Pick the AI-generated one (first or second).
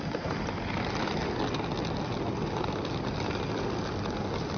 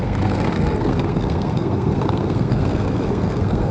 second